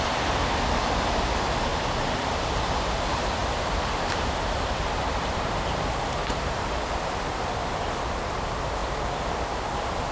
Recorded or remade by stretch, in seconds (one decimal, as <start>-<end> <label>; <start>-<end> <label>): 0.0-1.7 recorded; 1.7-2.3 remade; 2.3-3.4 recorded; 3.4-6.8 remade; 6.8-10.1 recorded